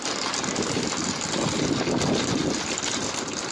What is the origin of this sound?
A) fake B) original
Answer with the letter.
B